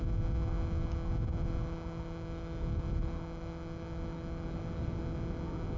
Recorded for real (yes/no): yes